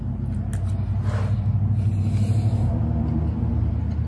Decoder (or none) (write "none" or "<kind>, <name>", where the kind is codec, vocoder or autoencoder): none